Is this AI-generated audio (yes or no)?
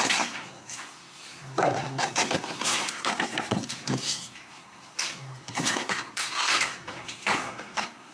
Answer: yes